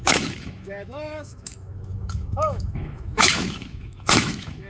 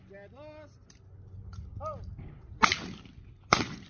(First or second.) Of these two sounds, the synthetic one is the first